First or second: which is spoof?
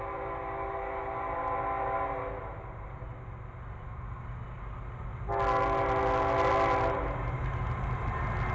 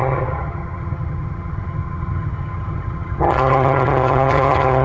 second